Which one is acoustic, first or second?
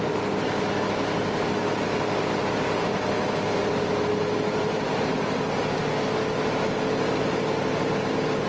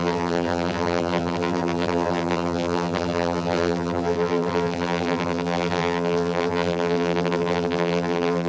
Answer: first